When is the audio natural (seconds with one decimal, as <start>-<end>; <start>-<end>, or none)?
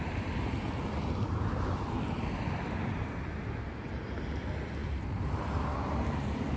0.0-6.6